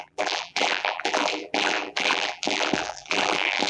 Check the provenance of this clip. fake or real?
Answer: fake